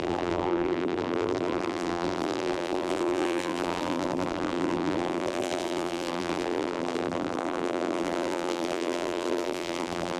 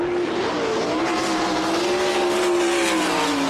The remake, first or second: first